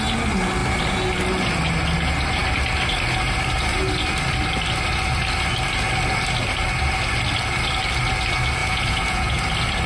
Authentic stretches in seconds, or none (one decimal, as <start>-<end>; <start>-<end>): 0.0-8.6; 9.4-9.9